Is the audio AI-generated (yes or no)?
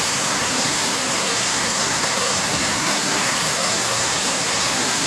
yes